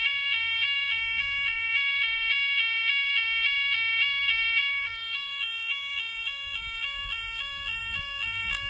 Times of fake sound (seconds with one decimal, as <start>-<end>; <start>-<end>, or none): 0.0-8.7

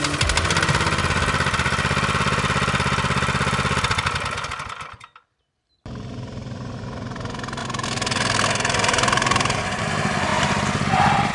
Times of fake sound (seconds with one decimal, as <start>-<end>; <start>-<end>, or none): none

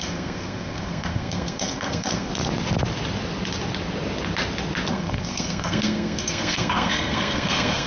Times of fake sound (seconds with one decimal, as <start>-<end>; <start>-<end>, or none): 0.0-2.3; 4.9-7.9

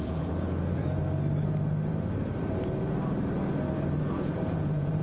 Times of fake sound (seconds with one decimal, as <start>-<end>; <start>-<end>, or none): 0.0-1.0; 4.0-5.0